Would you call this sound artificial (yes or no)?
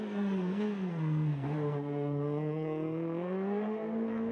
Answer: yes